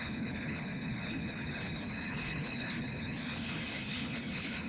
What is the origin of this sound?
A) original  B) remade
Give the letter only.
B